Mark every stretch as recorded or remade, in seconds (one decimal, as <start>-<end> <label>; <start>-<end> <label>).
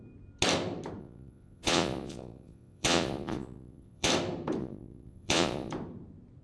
0.0-1.0 recorded; 1.0-4.1 remade; 4.1-4.6 recorded; 4.6-5.7 remade; 5.7-6.4 recorded